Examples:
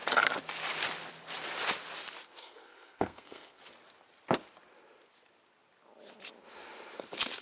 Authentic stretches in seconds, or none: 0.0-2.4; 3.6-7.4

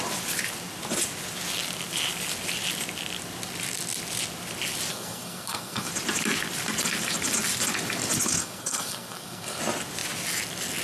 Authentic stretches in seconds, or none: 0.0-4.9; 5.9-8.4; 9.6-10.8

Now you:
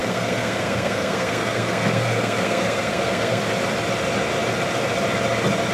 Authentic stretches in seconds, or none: 3.4-5.7

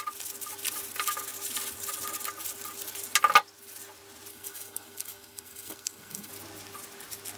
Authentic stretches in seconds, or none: 0.0-4.3; 6.3-7.4

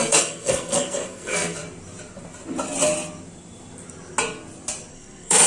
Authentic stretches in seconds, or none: 1.6-4.9